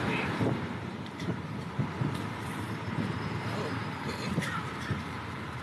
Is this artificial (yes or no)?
yes